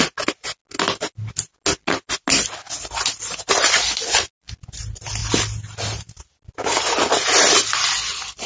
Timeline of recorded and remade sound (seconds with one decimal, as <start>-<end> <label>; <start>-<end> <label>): 0.0-8.5 recorded